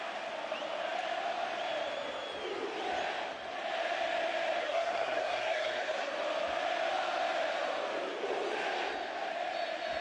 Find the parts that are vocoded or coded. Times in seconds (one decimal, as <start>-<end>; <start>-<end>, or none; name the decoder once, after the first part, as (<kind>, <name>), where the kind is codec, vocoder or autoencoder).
4.6-6.1 (codec, SNAC)